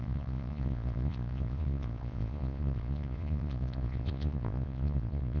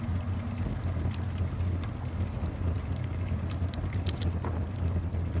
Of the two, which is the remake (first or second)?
first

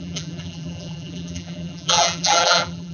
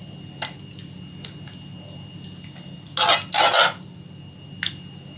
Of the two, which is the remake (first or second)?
first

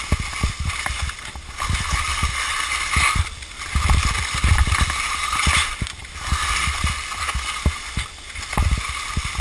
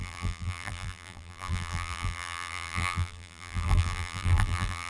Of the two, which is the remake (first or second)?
second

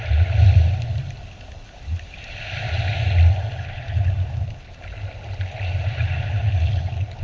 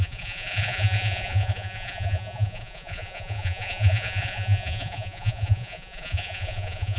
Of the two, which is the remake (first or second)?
second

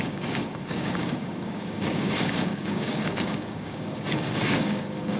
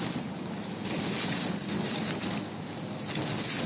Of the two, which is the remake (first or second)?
first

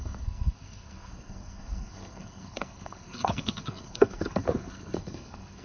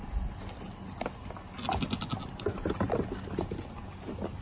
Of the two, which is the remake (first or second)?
first